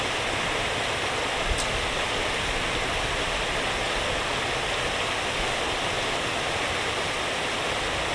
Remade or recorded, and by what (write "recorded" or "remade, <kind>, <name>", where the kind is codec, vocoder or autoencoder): recorded